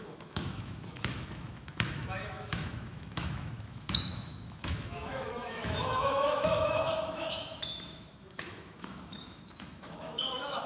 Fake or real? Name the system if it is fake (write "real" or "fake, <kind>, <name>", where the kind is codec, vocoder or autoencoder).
fake, autoencoder, DAC-VAE